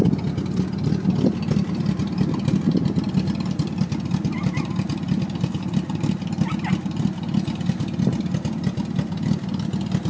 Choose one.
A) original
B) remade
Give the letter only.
A